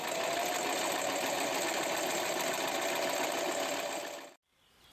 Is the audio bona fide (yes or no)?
yes